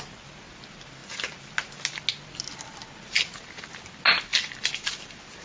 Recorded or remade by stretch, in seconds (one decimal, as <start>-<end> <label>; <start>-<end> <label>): 0.0-4.3 recorded; 4.3-5.0 remade; 5.0-5.4 recorded